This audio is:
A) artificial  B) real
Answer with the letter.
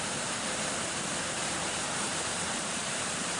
A